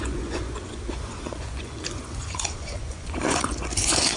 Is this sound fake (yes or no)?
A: yes